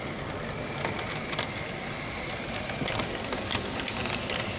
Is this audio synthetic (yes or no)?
no